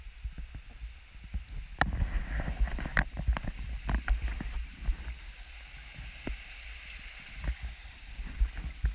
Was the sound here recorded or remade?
recorded